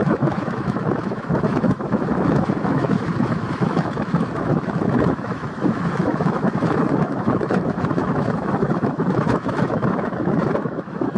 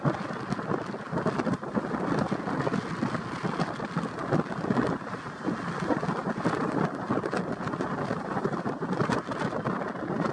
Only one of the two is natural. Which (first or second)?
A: second